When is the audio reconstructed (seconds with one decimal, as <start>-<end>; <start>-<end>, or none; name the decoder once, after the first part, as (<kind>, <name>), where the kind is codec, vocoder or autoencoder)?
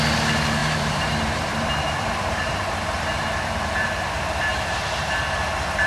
0.6-4.1 (vocoder, BigVGAN v2); 4.5-5.1